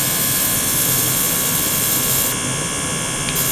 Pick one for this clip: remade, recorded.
recorded